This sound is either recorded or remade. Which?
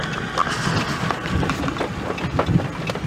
recorded